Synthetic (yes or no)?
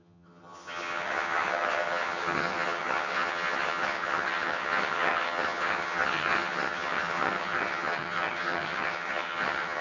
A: yes